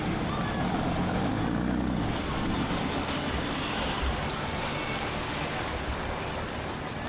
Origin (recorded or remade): recorded